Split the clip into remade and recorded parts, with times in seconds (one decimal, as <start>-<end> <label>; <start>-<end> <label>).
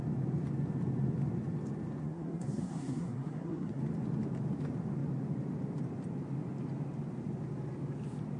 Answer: 0.0-2.0 recorded; 2.0-3.8 remade; 3.8-8.4 recorded